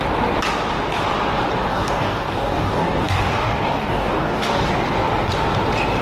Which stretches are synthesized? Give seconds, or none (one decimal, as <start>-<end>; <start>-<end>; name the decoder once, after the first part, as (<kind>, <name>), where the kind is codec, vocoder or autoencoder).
1.7-4.7 (codec, DAC)